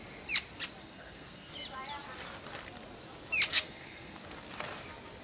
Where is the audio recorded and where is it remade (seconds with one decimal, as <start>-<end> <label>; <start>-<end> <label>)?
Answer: 0.0-0.8 recorded; 0.8-1.5 remade; 1.5-3.5 recorded; 3.5-4.2 remade; 4.2-5.2 recorded